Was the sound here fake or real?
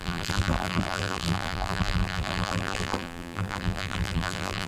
fake